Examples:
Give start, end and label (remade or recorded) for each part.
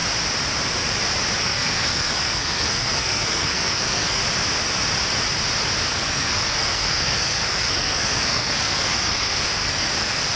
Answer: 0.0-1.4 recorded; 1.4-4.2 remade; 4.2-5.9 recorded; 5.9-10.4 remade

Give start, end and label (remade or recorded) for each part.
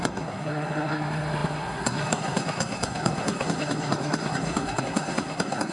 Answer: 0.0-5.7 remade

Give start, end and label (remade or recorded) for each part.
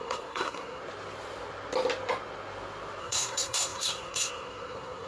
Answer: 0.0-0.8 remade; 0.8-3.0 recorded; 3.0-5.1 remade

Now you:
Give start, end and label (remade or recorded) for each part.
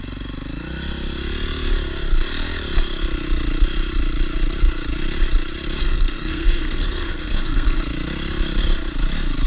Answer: 0.0-5.8 recorded; 5.8-7.8 remade; 7.8-9.5 recorded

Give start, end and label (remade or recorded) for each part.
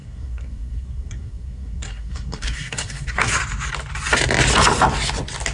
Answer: 0.0-3.3 remade; 3.3-5.5 recorded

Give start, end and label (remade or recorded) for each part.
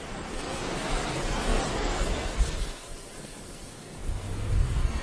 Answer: 0.0-5.0 remade